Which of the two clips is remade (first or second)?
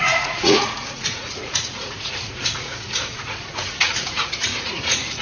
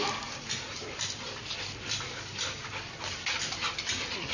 first